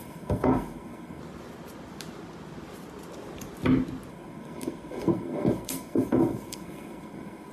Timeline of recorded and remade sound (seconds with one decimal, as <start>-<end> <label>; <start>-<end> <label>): 0.0-1.2 remade; 1.2-4.1 recorded; 4.1-7.5 remade